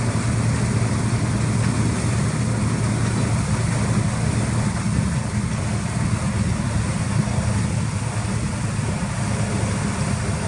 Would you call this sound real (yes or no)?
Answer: yes